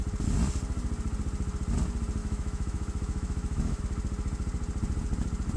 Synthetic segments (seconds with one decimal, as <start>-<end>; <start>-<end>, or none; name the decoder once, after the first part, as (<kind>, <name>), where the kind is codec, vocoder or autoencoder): 2.2-3.8 (autoencoder, DAC-VAE)